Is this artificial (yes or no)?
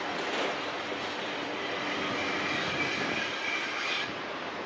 no